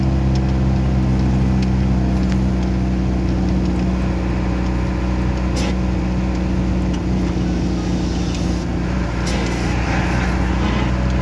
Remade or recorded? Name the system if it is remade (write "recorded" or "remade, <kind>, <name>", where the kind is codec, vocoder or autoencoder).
recorded